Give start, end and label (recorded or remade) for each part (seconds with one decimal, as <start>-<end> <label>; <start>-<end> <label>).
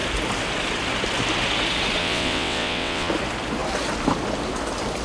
0.0-2.0 recorded; 2.0-3.1 remade; 3.1-5.0 recorded